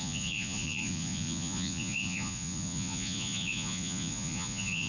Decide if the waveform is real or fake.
fake